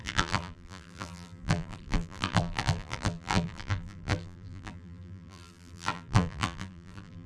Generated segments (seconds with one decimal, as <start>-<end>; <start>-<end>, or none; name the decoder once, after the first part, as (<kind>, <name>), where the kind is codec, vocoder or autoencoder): 0.0-7.3 (vocoder, BigVGAN v2)